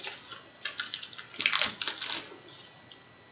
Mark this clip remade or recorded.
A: recorded